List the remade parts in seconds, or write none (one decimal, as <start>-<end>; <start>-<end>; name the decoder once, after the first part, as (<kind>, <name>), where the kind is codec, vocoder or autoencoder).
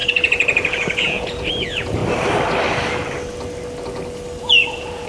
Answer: 0.0-2.0 (vocoder, Vocos); 4.4-5.1